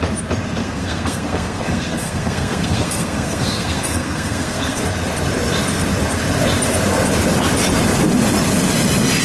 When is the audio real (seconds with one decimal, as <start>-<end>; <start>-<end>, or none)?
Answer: 0.0-0.6; 4.8-9.2